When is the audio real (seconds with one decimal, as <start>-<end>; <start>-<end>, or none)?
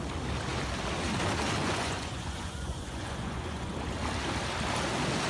0.0-1.6; 3.7-5.3